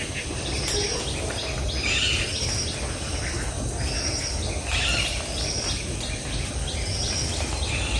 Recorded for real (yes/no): yes